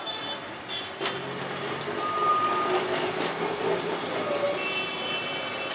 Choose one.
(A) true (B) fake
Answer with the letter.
A